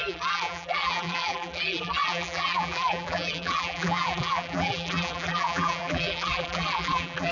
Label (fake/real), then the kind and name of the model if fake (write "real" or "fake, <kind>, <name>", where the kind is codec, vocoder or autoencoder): fake, vocoder, BigVGAN v2